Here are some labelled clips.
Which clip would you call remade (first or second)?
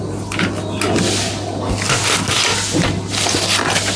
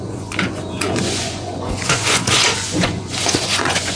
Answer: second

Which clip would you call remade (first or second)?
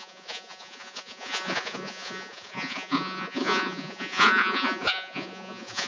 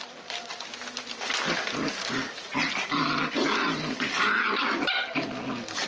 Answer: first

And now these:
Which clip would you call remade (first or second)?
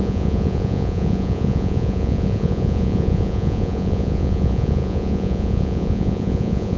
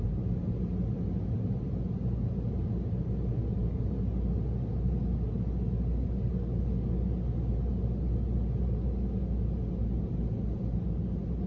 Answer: first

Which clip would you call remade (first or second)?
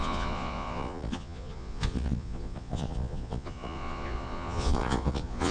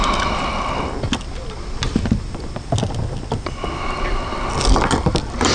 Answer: first